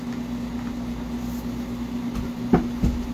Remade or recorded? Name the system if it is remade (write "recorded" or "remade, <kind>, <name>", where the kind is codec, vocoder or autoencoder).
recorded